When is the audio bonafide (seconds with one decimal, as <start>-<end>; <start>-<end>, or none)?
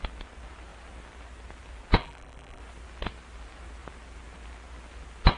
0.0-2.0; 2.6-5.4